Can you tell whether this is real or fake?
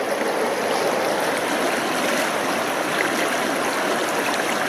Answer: real